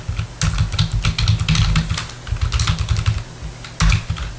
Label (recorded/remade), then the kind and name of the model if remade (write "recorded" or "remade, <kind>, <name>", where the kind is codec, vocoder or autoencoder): recorded